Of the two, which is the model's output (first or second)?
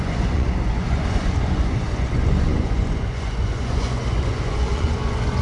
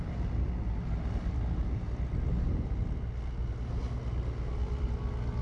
first